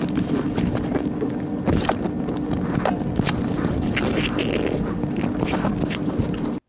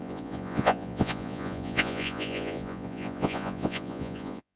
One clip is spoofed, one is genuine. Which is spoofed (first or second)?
second